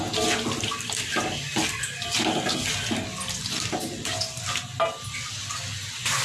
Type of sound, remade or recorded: recorded